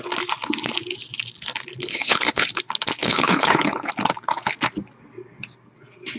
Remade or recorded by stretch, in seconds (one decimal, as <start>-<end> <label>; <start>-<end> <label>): 0.0-1.8 recorded; 1.8-2.6 remade; 2.6-3.0 recorded; 3.0-3.9 remade; 3.9-6.2 recorded